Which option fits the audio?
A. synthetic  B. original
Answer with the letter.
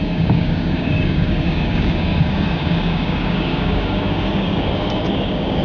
A